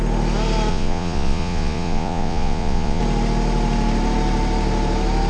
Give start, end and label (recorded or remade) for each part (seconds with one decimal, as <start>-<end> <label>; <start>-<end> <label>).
0.0-0.7 recorded; 0.7-3.0 remade; 3.0-5.3 recorded